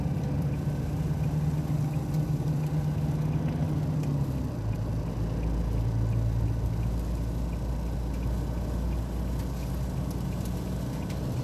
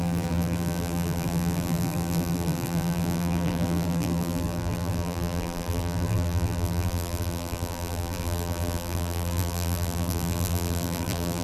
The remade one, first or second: second